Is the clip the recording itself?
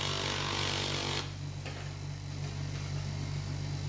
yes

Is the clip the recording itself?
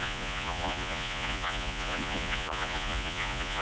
no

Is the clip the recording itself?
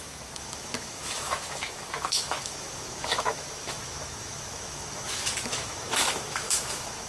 no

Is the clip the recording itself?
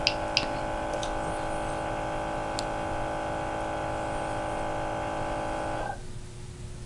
yes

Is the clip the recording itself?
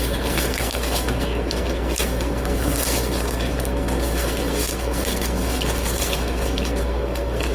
no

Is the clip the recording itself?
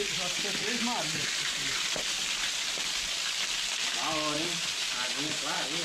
yes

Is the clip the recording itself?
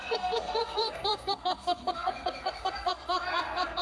no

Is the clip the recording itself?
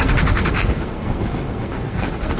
no